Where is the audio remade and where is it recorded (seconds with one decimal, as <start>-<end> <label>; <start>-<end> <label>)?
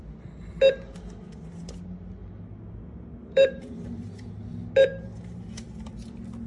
0.0-3.2 recorded; 3.2-4.4 remade; 4.4-4.9 recorded; 4.9-5.9 remade; 5.9-6.5 recorded